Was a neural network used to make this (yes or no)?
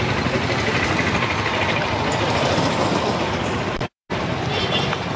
no